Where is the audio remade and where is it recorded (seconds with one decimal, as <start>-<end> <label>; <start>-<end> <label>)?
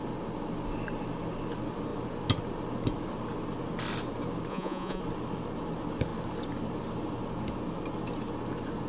0.0-4.5 recorded; 4.5-5.0 remade; 5.0-8.9 recorded